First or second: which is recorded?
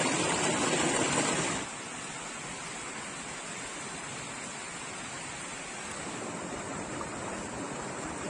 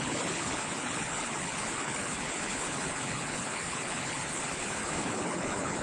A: first